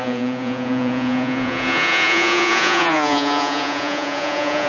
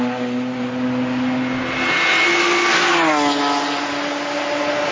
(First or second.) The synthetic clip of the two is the first